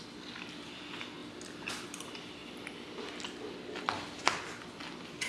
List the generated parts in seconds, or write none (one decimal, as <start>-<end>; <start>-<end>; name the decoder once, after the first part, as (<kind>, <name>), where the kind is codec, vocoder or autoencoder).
none